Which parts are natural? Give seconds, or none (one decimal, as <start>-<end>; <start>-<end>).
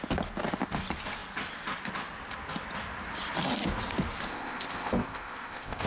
0.0-4.3